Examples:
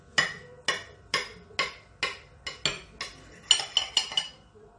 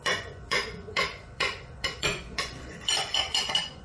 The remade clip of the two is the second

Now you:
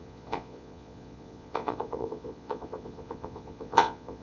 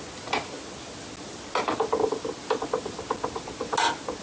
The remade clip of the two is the first